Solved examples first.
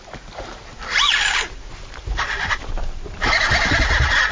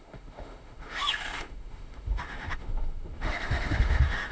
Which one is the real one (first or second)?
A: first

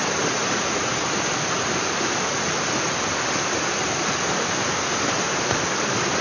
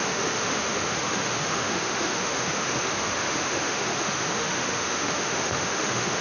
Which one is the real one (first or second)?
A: first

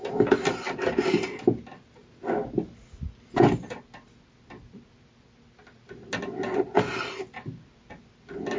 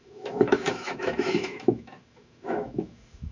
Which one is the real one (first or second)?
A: first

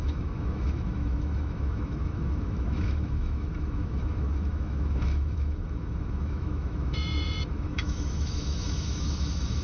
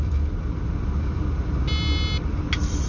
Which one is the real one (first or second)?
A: second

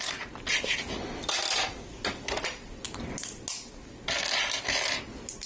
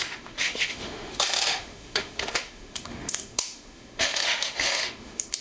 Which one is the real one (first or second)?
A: first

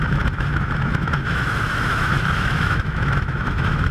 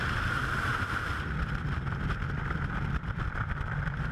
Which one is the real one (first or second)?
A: second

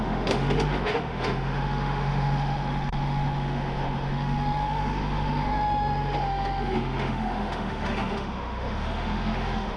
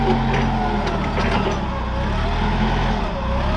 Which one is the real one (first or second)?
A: second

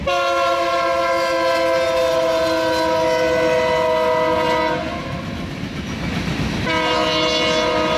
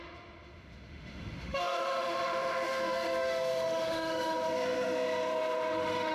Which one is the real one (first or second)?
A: first